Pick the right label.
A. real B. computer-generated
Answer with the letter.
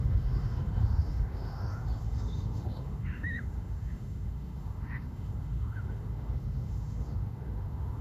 B